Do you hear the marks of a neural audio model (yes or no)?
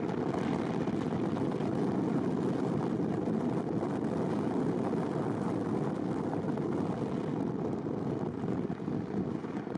no